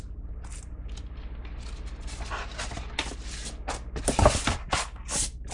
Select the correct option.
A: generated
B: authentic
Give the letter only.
B